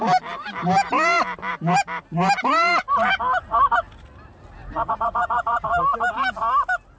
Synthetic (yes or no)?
no